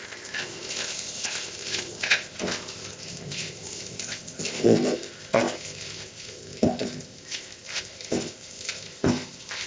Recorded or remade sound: remade